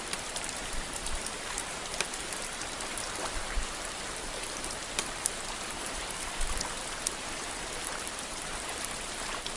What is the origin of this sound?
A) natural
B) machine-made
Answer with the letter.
B